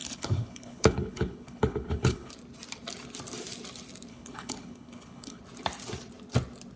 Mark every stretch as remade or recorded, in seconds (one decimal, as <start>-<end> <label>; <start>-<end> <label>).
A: 0.0-2.3 remade; 2.3-4.1 recorded; 4.1-5.4 remade; 5.4-6.8 recorded